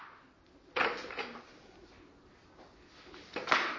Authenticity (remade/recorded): recorded